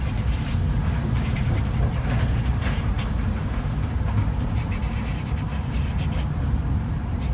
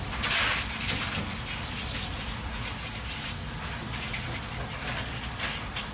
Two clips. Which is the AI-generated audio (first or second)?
first